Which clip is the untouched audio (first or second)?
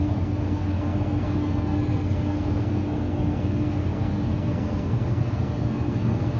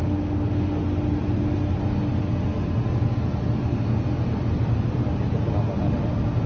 second